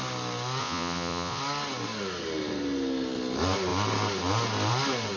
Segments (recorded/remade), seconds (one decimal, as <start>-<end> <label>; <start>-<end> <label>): 0.0-0.6 recorded; 0.6-1.4 remade; 1.4-5.2 recorded